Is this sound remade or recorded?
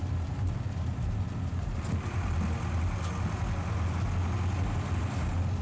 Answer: recorded